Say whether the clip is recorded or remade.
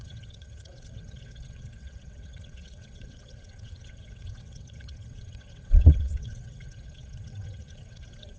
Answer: remade